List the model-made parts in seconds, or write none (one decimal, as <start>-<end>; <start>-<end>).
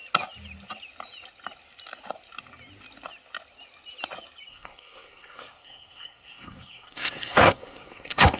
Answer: 4.5-8.4